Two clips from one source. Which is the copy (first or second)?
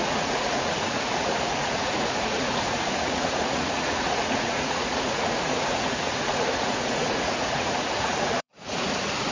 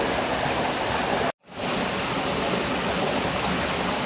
first